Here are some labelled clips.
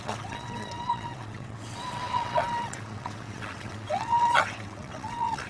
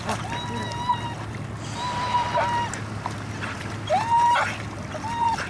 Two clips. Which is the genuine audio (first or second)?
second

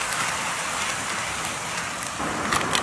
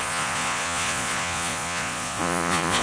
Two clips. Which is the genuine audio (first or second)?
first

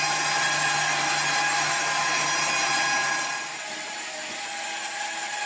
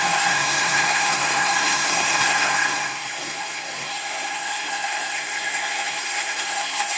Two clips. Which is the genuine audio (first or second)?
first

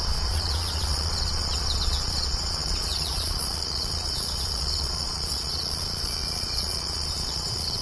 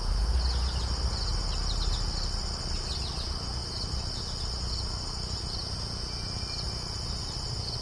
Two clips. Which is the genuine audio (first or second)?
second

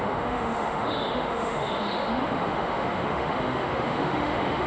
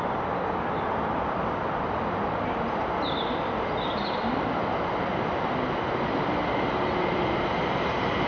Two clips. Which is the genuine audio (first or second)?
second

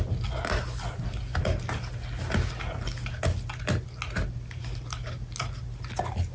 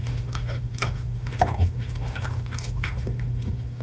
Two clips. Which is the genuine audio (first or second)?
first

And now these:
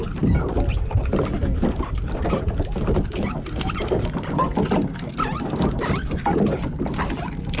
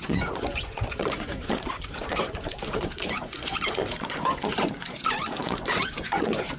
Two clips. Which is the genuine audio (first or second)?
first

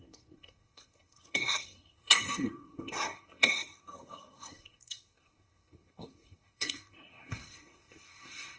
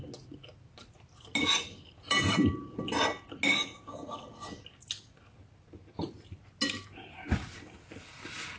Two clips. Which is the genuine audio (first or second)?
second